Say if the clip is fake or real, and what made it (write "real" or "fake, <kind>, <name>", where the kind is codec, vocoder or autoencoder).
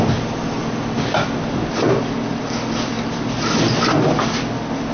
real